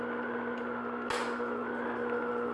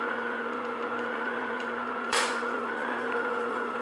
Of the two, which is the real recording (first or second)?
first